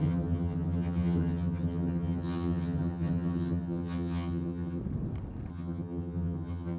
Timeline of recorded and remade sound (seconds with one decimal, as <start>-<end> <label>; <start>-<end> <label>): 0.0-4.8 remade; 4.8-5.5 recorded; 5.5-6.8 remade